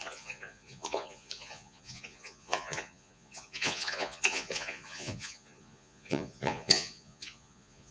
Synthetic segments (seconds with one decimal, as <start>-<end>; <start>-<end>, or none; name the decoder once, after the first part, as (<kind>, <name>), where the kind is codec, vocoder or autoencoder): 0.0-7.9 (vocoder, Vocos)